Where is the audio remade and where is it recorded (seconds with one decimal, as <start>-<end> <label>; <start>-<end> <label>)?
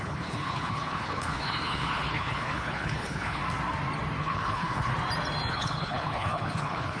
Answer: 0.0-3.4 remade; 3.4-4.2 recorded; 4.2-4.9 remade; 4.9-5.5 recorded; 5.5-7.0 remade